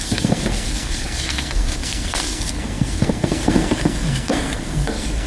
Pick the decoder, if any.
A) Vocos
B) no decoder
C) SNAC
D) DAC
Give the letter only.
C